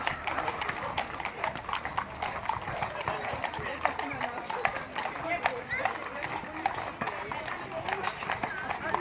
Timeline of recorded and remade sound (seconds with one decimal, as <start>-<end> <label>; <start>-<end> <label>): 0.0-9.0 recorded